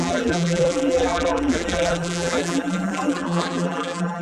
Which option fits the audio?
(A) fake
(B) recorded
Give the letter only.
A